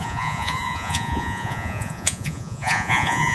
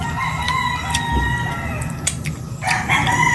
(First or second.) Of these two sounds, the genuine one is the second